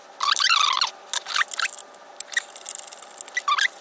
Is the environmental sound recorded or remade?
recorded